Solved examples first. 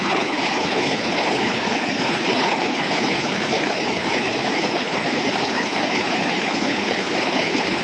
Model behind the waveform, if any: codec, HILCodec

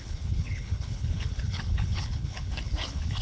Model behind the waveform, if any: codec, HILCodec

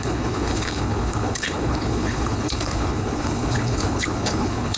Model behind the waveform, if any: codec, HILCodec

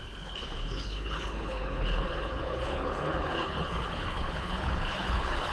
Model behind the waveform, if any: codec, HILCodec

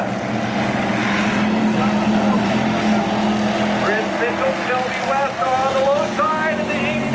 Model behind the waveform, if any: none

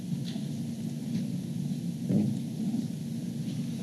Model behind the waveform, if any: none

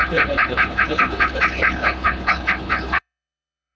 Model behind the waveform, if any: codec, HILCodec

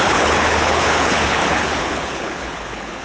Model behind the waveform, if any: codec, HILCodec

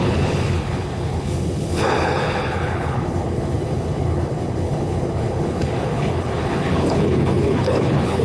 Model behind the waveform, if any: codec, HILCodec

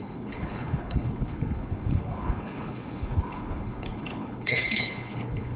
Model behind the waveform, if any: codec, HILCodec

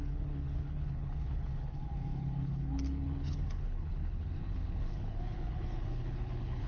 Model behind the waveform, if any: codec, HILCodec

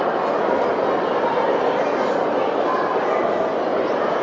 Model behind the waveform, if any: none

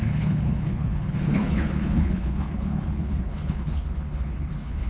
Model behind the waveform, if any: codec, HILCodec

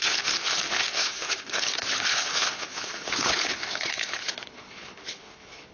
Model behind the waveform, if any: codec, HILCodec